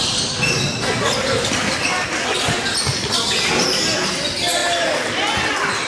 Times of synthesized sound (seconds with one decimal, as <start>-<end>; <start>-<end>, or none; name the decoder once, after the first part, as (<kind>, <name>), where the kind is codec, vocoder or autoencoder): none